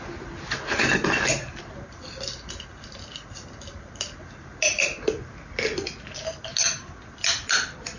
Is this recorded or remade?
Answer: recorded